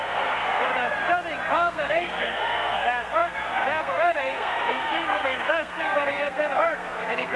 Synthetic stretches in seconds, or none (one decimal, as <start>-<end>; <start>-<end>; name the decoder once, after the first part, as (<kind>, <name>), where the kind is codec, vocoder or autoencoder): 0.0-0.7 (codec, SNAC); 1.5-7.4